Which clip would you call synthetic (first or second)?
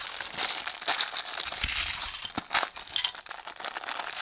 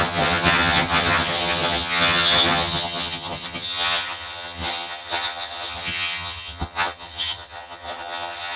second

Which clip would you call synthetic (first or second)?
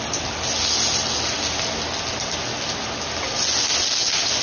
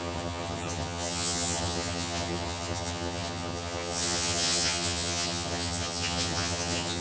second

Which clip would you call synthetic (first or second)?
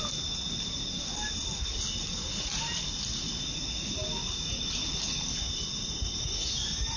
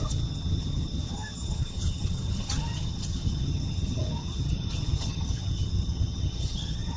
second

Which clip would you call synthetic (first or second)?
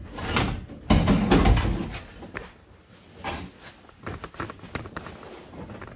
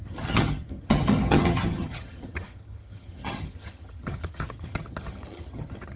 second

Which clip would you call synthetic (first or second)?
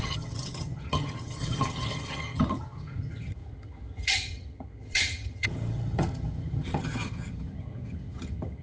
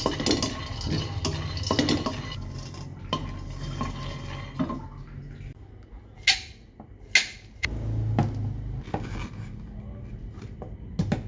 first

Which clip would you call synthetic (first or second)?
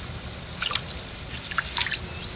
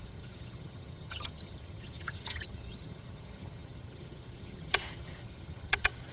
second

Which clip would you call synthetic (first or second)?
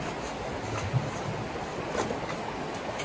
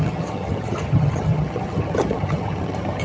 second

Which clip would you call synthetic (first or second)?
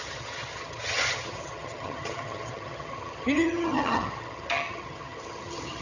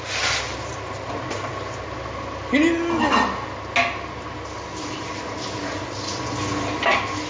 first